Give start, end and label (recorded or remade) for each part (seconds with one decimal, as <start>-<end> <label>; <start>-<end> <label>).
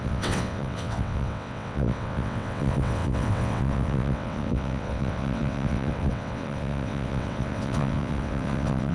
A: 0.0-8.9 remade